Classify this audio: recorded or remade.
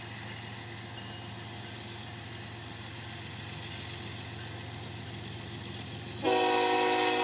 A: recorded